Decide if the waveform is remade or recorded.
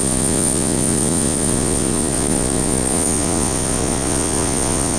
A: remade